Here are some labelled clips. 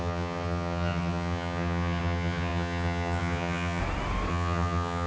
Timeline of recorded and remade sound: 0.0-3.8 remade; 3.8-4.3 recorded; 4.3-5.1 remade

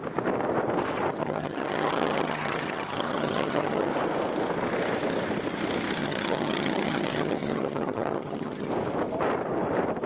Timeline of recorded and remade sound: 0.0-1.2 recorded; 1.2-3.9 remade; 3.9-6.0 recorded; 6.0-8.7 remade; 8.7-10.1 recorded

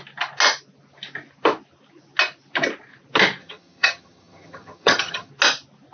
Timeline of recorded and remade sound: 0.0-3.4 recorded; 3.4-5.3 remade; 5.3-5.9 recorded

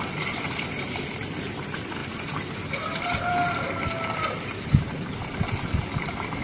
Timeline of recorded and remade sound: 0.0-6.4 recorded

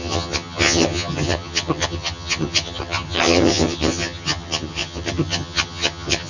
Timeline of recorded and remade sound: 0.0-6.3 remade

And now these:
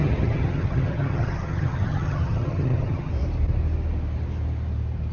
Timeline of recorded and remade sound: 0.0-3.1 remade; 3.1-5.1 recorded